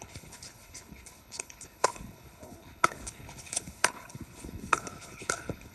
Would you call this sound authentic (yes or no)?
no